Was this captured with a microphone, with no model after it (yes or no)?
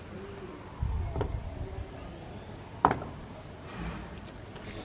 yes